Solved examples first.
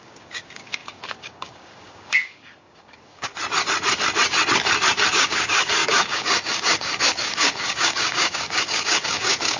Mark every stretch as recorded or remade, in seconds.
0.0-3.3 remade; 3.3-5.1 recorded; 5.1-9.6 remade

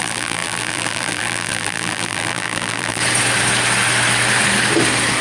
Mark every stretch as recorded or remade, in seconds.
0.0-3.0 remade; 3.0-5.2 recorded

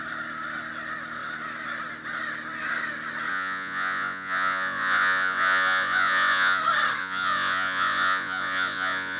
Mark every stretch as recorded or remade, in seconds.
0.0-3.3 recorded; 3.3-6.6 remade; 6.6-7.0 recorded; 7.0-9.2 remade

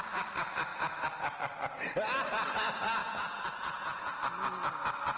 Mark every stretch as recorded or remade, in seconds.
0.0-3.0 recorded; 3.0-4.1 remade; 4.1-5.2 recorded

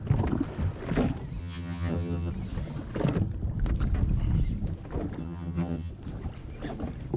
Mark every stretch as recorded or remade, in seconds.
0.0-1.4 recorded; 1.4-2.3 remade; 2.3-5.2 recorded; 5.2-5.9 remade; 5.9-7.2 recorded